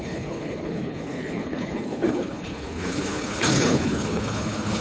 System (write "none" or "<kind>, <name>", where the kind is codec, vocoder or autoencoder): codec, HILCodec